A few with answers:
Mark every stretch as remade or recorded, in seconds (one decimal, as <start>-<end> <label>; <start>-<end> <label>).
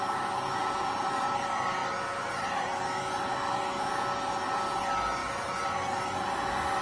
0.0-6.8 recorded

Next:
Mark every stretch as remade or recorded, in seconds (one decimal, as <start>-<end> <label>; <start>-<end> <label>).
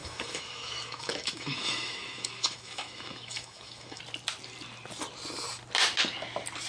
0.0-4.0 remade; 4.0-6.7 recorded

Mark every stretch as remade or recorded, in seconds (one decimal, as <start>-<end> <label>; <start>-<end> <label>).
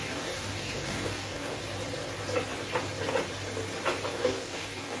0.0-1.6 remade; 1.6-4.1 recorded; 4.1-5.0 remade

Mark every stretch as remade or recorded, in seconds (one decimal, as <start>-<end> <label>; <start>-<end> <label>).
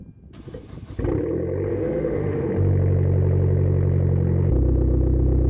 0.0-1.7 recorded; 1.7-2.5 remade; 2.5-5.5 recorded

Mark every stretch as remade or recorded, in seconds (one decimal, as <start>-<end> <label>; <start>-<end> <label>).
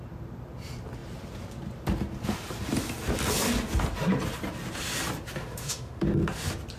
0.0-5.4 recorded; 5.4-6.1 remade; 6.1-6.8 recorded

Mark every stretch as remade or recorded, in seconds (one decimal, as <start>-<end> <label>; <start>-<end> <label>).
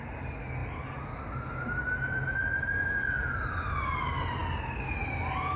0.0-5.6 recorded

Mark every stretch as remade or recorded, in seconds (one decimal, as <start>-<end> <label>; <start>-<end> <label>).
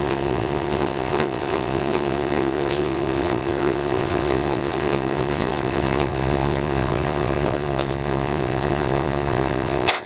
0.0-10.1 remade